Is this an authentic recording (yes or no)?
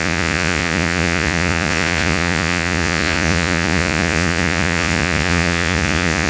no